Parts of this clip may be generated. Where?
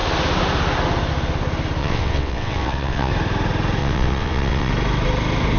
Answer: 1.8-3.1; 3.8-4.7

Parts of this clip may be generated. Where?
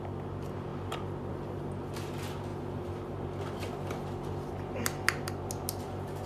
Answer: none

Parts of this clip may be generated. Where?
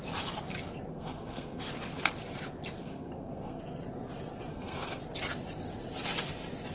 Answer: 0.9-1.6; 2.8-3.6; 4.5-5.0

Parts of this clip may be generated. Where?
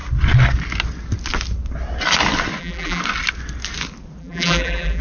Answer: 2.6-3.0; 4.2-5.0